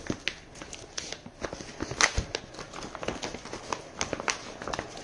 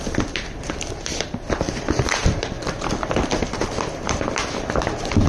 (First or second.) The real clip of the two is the first